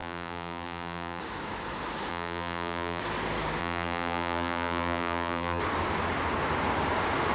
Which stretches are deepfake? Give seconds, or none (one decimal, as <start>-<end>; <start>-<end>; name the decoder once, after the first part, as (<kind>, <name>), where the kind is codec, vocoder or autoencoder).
0.0-1.2 (vocoder, BigVGAN v2); 2.1-3.0; 3.6-5.6